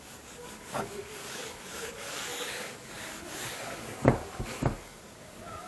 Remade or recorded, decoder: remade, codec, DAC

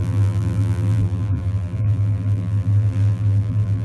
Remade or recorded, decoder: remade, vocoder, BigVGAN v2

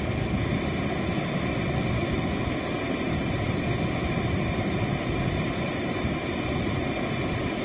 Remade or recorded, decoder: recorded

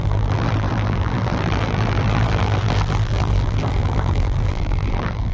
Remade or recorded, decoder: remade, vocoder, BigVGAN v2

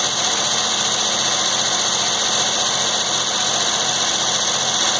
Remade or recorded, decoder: recorded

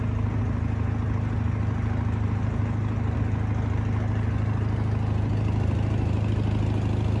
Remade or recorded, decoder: recorded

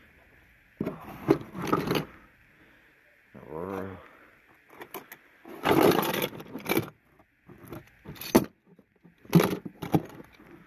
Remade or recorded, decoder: recorded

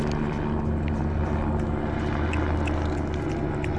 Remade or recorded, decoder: recorded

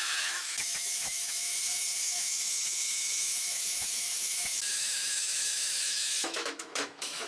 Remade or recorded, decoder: remade, autoencoder, DAC-VAE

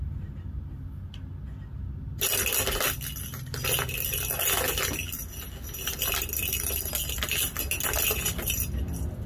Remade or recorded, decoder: recorded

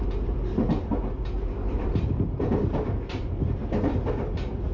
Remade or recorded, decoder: recorded